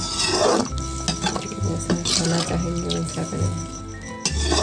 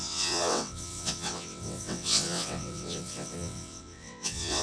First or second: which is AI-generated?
second